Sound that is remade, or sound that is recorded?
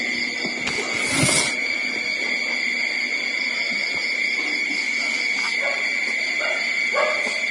recorded